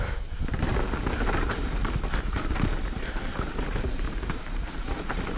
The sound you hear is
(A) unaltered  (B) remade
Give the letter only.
A